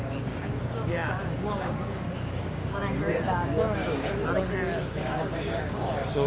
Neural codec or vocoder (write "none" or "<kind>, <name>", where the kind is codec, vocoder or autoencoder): codec, DAC